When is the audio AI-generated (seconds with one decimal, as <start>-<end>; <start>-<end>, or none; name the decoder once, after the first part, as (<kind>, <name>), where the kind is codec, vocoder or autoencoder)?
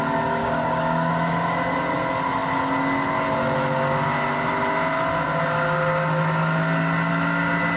0.4-1.1 (codec, DAC)